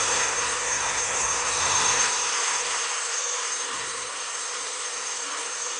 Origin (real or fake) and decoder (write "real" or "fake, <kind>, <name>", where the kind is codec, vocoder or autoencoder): fake, codec, SNAC